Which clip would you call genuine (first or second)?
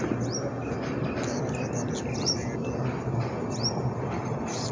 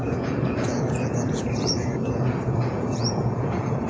first